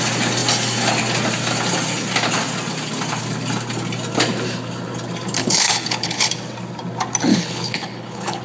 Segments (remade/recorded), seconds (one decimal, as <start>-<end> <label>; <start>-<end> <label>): 0.0-5.4 recorded; 5.4-6.3 remade; 6.3-7.3 recorded; 7.3-8.4 remade